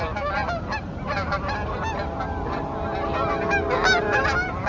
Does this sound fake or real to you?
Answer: real